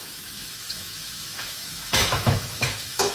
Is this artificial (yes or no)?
yes